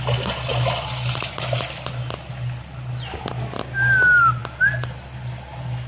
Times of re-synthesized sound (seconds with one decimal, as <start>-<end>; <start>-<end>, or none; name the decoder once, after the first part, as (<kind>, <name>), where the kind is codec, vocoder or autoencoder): none